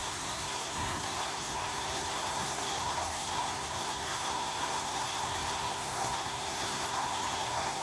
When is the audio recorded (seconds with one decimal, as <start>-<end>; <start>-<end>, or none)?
none